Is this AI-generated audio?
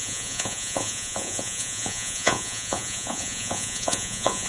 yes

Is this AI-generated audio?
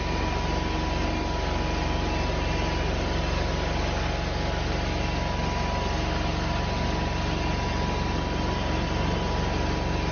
no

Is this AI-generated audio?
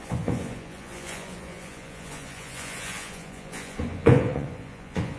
yes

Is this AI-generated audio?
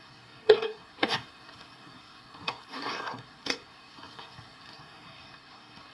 yes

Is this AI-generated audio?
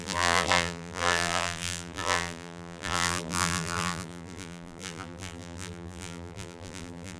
yes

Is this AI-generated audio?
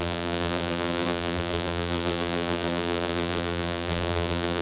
yes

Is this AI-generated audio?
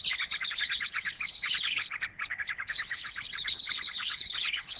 yes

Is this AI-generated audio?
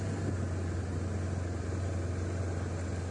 no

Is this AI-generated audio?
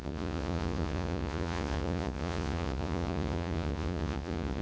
yes